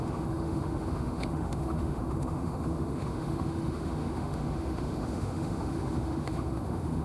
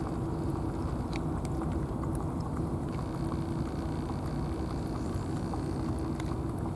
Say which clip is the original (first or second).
second